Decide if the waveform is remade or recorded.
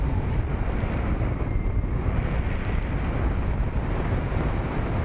recorded